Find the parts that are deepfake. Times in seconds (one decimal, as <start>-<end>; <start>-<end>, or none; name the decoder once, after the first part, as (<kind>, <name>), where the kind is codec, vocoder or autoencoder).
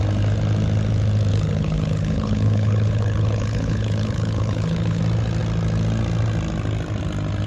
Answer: 1.3-5.0 (codec, HILCodec)